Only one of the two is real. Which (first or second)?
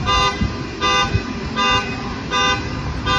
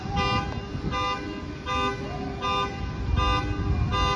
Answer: second